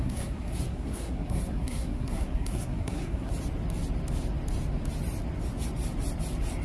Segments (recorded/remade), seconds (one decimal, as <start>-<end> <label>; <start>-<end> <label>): 0.0-3.3 remade; 3.3-6.6 recorded